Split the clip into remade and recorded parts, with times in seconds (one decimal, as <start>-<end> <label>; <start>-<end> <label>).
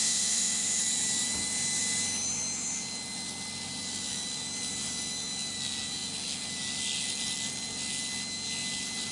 0.0-0.8 remade; 0.8-9.1 recorded